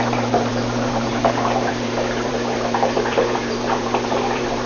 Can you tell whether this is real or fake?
fake